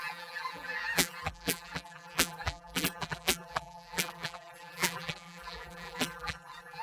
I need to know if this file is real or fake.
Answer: fake